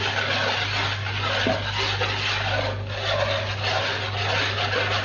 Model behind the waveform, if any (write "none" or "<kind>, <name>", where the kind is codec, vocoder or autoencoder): none